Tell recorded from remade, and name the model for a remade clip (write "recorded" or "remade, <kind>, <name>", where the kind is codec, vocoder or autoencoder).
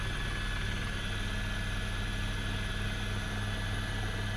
recorded